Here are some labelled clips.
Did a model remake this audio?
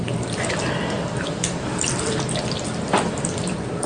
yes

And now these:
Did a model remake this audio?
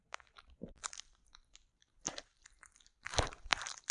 yes